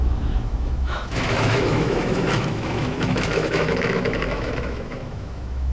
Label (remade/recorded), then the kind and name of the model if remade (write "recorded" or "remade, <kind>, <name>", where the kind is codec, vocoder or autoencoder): remade, autoencoder, DAC-VAE